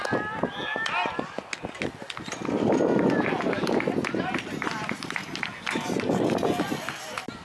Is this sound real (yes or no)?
yes